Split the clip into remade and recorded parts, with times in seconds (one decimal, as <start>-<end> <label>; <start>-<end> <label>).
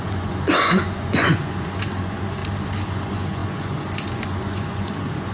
0.0-2.4 remade; 2.4-2.9 recorded; 2.9-5.3 remade